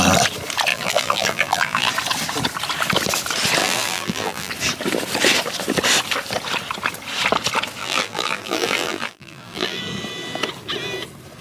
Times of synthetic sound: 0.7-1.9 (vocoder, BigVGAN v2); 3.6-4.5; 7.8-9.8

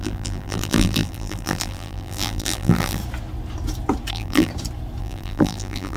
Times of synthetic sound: 0.0-3.0 (vocoder, BigVGAN v2); 4.1-4.5; 5.0-6.0

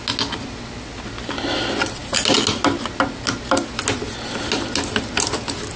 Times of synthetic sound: none

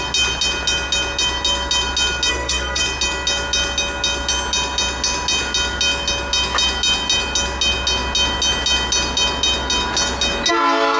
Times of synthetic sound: 2.3-2.8 (codec, SNAC)